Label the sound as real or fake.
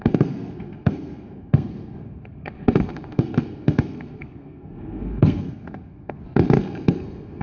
fake